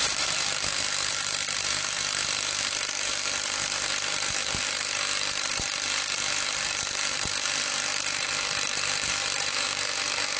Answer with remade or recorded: remade